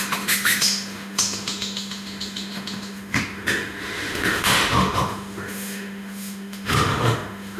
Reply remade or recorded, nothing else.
remade